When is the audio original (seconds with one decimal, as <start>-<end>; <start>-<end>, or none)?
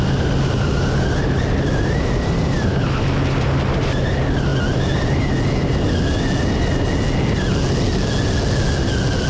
0.0-9.3